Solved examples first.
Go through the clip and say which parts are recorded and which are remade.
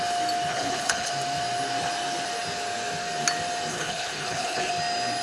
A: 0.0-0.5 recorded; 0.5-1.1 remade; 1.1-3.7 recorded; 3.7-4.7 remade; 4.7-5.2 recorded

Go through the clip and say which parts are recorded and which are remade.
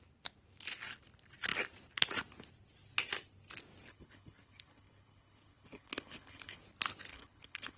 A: 0.0-3.9 recorded; 3.9-6.6 remade; 6.6-7.1 recorded; 7.1-7.8 remade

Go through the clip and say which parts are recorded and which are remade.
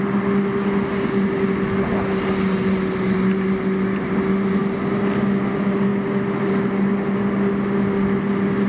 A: 0.0-8.7 recorded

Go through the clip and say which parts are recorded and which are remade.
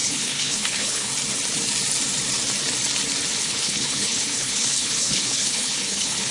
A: 0.0-1.1 remade; 1.1-3.4 recorded; 3.4-6.3 remade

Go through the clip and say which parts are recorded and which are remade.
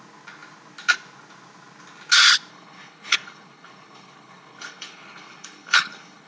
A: 0.0-2.5 recorded; 2.5-6.3 remade